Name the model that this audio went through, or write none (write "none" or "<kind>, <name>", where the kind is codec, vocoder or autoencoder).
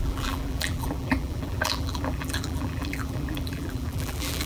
vocoder, BigVGAN v2